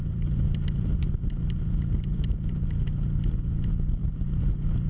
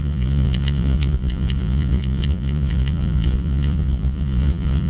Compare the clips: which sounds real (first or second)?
first